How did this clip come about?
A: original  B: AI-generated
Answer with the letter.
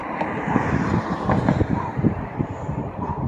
B